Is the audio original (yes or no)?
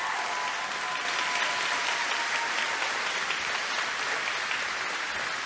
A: yes